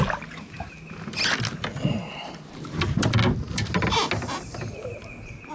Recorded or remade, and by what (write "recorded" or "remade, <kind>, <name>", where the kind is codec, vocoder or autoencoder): recorded